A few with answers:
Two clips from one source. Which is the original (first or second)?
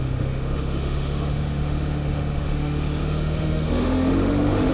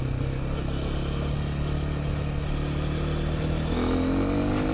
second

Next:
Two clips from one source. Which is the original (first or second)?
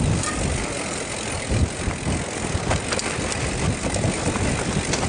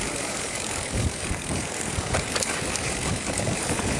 first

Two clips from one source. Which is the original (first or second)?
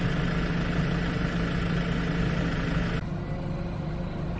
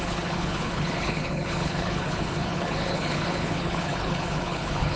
first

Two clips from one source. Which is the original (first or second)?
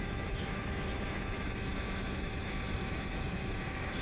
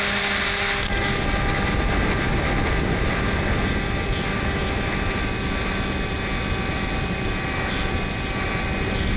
second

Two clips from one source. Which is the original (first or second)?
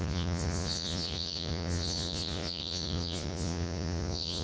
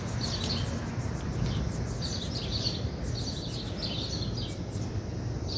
second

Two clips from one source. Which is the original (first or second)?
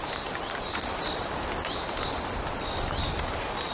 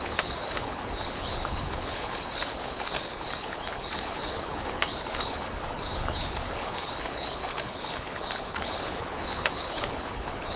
first